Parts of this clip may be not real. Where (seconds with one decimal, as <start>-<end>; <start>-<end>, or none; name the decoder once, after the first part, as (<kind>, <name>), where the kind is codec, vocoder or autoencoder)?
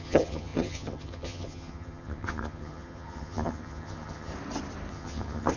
0.0-4.3 (vocoder, HiFi-GAN); 4.9-5.6